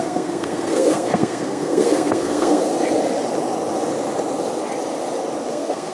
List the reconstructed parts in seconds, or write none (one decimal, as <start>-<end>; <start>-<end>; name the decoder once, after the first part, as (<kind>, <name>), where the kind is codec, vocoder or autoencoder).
0.0-2.7 (codec, SNAC); 5.5-5.9